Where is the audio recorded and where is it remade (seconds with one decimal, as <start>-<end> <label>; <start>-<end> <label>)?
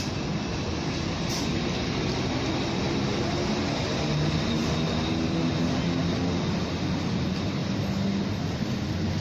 0.0-9.2 recorded